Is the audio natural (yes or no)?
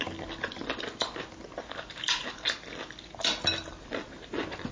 yes